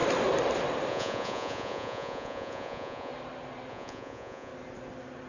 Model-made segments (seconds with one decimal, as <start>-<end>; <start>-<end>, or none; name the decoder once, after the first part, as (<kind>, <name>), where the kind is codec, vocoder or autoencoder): 0.9-3.1 (vocoder, Vocos); 3.7-4.5